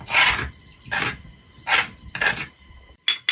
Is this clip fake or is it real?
real